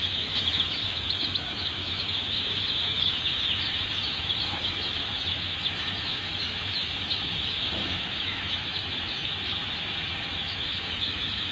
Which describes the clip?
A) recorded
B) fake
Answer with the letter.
B